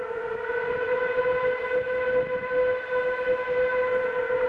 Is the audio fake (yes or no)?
no